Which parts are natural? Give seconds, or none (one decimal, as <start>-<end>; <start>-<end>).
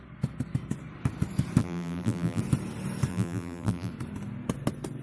0.0-1.6; 2.4-3.1; 3.9-5.0